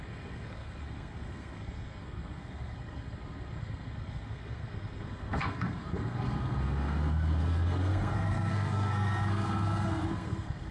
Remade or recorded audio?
remade